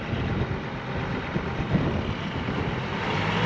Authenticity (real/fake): real